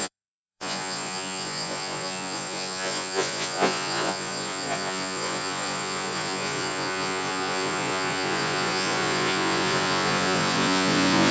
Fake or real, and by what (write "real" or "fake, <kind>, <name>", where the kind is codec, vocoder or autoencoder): fake, vocoder, Vocos